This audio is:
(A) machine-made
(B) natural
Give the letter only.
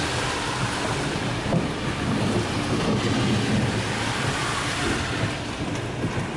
B